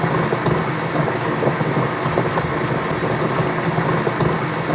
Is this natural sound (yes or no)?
yes